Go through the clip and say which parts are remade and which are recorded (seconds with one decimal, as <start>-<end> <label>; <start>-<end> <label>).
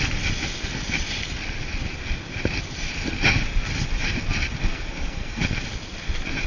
0.0-4.7 recorded; 4.7-5.4 remade; 5.4-6.5 recorded